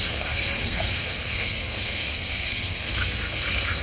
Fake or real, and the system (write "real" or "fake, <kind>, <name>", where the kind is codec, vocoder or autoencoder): fake, codec, SNAC